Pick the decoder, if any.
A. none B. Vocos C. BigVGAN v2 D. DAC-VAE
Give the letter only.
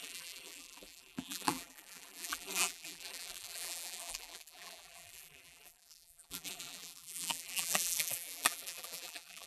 C